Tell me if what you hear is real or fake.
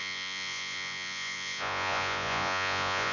fake